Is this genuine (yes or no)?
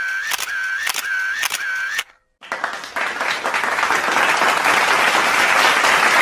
yes